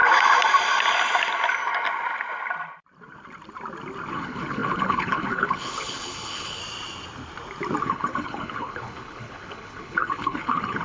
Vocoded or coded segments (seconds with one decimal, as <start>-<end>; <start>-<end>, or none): 4.1-6.6; 7.8-10.8